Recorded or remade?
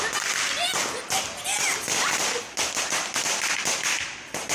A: recorded